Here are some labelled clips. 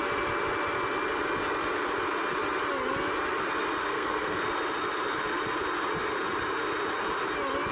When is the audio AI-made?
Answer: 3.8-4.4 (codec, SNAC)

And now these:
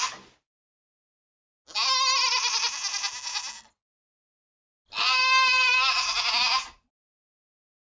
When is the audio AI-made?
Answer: none

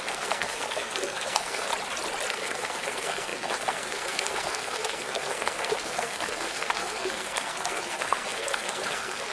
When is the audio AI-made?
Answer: 0.0-1.7 (codec, SNAC); 2.3-9.3